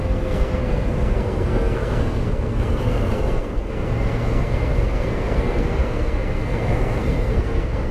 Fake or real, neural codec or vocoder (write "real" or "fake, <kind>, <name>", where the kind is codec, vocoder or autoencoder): fake, codec, SNAC